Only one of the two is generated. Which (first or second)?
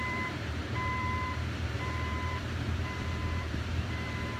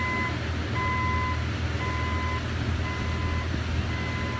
first